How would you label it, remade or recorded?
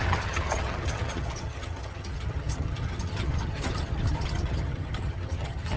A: remade